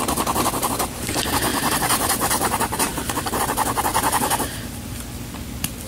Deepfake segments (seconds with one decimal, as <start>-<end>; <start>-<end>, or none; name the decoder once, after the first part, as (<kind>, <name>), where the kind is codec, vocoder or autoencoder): 1.5-3.4 (vocoder, BigVGAN v2); 3.9-5.0

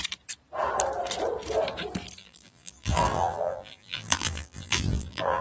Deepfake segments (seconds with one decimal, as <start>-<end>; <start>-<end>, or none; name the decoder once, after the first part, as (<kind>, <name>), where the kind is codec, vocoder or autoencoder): 2.2-5.4 (vocoder, BigVGAN v2)

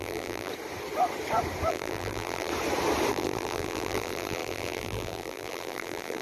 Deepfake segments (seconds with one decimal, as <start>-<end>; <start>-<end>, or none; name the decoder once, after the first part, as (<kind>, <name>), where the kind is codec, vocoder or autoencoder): 0.0-0.5 (vocoder, BigVGAN v2); 1.7-2.5; 3.1-6.2

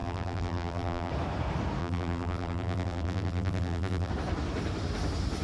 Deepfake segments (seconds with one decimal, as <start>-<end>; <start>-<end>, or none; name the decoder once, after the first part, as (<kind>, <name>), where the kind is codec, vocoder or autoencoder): 0.0-1.1 (vocoder, BigVGAN v2); 1.8-4.1